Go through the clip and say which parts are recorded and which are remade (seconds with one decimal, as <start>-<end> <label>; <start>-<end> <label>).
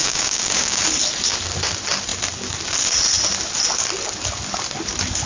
0.0-0.8 remade; 0.8-5.3 recorded